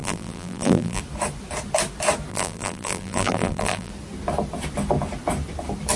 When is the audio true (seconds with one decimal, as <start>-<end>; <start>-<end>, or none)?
1.0-2.3; 3.9-6.0